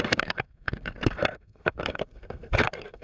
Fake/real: fake